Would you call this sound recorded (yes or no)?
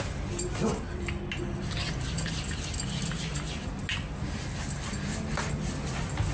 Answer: yes